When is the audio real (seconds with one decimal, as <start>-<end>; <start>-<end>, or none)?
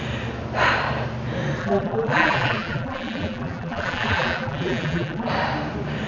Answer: 0.0-1.6; 5.3-6.1